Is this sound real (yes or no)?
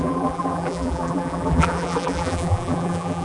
no